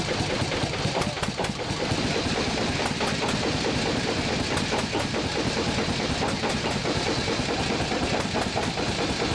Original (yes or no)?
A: yes